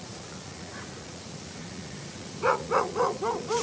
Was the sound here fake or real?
fake